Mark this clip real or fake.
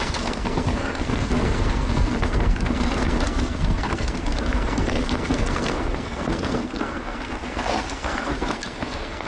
fake